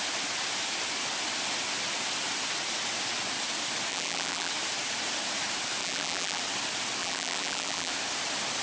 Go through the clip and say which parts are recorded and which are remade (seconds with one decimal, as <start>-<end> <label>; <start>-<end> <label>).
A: 0.0-3.9 recorded; 3.9-4.5 remade; 4.5-5.8 recorded; 5.8-6.4 remade; 6.4-7.0 recorded; 7.0-7.9 remade; 7.9-8.6 recorded